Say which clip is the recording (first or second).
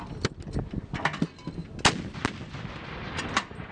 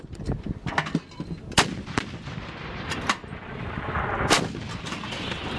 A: first